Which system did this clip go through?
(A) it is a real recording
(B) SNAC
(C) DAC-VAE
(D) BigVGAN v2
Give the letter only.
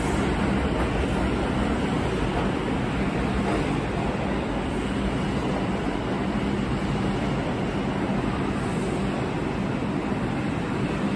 A